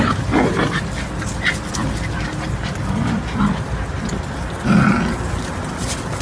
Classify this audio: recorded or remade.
recorded